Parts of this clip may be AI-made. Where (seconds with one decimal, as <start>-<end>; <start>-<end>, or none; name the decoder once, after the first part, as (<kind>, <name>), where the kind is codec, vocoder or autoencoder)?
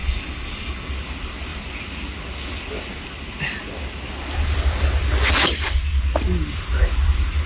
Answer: 0.0-0.9 (codec, DAC)